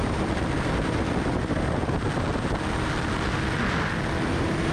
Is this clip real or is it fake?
real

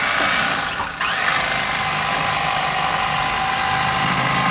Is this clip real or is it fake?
real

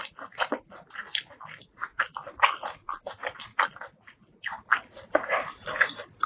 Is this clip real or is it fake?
real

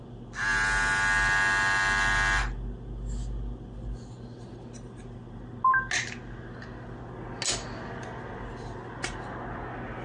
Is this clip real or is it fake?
real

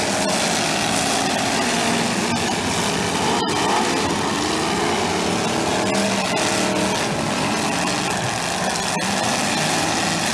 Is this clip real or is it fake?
real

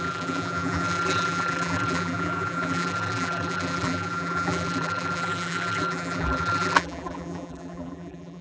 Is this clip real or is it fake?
fake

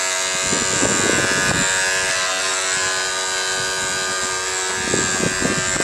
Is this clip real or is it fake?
real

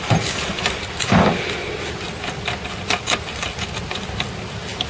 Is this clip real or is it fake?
real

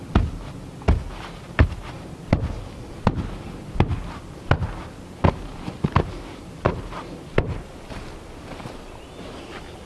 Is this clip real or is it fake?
real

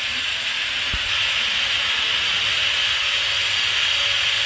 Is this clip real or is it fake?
real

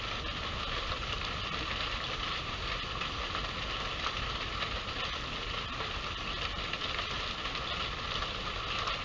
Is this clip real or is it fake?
real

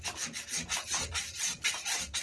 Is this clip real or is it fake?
real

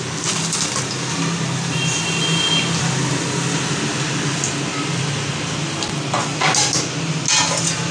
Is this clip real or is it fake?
real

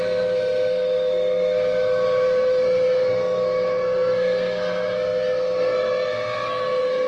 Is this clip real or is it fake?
fake